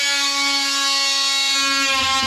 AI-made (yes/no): no